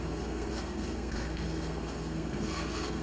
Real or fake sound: fake